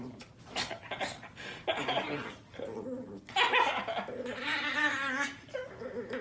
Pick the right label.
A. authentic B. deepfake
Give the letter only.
A